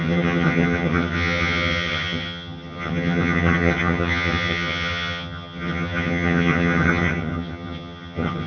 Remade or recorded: remade